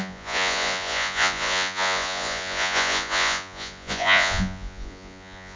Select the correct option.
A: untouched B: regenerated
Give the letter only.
B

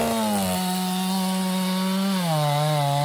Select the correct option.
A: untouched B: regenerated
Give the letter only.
A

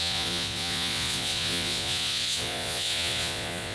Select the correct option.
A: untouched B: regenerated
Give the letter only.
B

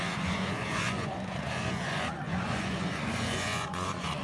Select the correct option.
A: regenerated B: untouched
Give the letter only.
A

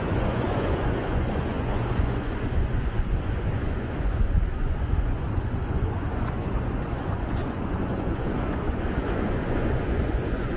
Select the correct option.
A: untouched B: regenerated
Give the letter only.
B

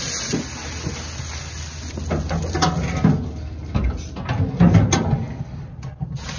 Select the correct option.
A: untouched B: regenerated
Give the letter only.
A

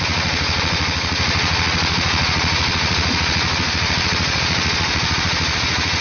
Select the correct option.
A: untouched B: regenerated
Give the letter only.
B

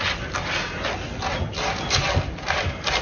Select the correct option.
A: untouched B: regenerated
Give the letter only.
A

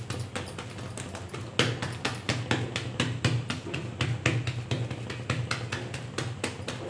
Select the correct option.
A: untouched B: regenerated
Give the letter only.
A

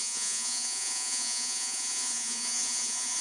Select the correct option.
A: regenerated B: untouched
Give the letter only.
A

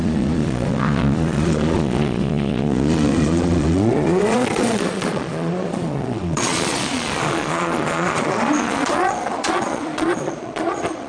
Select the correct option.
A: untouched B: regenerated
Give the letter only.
B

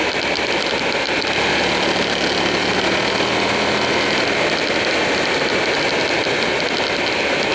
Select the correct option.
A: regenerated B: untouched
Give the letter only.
B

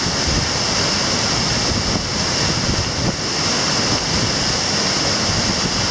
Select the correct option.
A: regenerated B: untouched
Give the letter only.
B